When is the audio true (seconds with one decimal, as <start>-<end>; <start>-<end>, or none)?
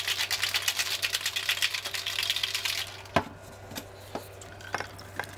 0.0-5.4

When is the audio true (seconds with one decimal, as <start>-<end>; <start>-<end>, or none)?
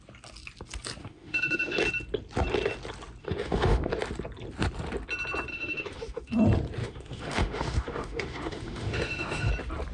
0.0-1.0; 1.8-3.2; 3.9-5.5; 6.3-6.8; 9.5-9.9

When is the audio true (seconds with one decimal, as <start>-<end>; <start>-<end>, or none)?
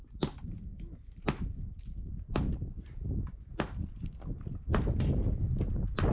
0.0-6.1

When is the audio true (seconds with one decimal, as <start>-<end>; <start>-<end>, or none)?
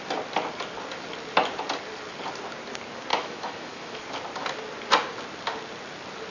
0.0-3.1; 4.0-6.3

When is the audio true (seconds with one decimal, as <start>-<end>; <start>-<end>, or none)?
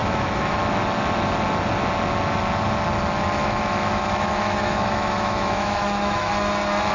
0.6-3.4; 6.3-6.9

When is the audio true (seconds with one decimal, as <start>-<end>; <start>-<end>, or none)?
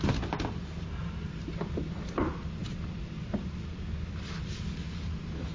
0.0-5.5